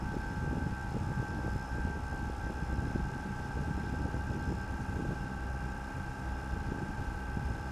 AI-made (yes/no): yes